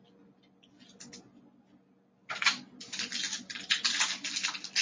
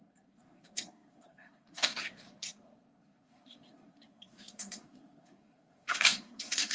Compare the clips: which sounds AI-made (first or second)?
second